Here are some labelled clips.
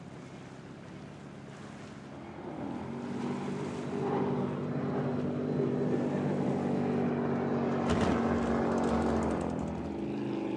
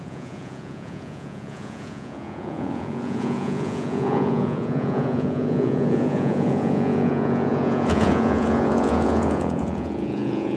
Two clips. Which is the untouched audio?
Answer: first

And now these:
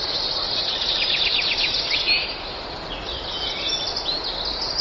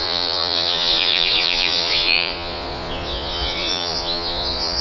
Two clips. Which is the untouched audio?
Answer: first